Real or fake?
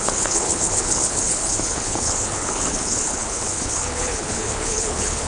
fake